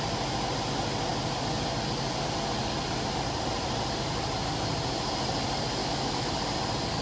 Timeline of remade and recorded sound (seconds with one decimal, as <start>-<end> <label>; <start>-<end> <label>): 0.0-5.8 recorded; 5.8-6.3 remade; 6.3-7.0 recorded